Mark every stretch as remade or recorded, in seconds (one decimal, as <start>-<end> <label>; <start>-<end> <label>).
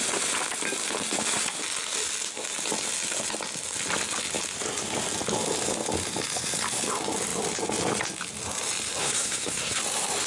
0.0-9.0 recorded; 9.0-9.8 remade; 9.8-10.3 recorded